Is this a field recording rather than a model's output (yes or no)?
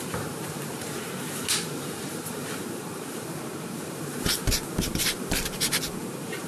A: no